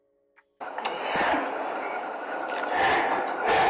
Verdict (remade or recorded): recorded